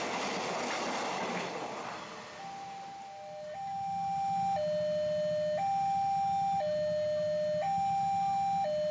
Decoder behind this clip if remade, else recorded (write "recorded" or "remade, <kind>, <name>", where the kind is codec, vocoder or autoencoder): recorded